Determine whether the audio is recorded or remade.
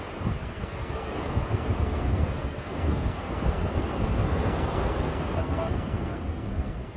remade